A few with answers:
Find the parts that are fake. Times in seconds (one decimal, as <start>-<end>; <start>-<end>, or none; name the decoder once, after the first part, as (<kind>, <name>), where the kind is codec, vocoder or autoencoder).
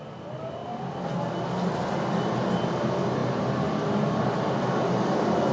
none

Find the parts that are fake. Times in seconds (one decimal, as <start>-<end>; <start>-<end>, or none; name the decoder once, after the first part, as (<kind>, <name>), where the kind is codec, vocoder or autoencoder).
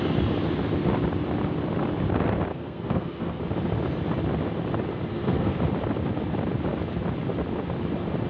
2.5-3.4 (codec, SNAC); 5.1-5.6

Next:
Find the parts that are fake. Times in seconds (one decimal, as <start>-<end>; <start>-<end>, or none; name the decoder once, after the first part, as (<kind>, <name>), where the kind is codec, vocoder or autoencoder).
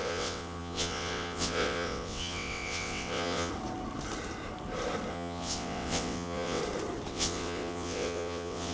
0.0-3.5 (vocoder, WaveNeXt); 5.1-6.6; 7.1-8.7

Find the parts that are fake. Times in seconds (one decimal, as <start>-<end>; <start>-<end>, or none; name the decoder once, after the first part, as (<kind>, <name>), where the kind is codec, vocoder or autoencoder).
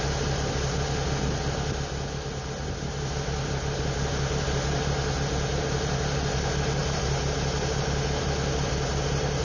none